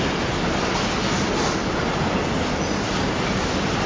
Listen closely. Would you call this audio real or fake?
real